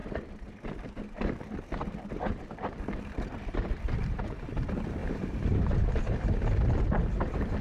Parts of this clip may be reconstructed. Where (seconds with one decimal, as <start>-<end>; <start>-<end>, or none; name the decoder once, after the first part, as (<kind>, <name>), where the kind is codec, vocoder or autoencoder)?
0.0-4.6 (vocoder, BigVGAN v2); 5.0-6.0